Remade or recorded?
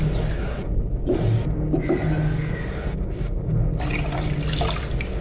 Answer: recorded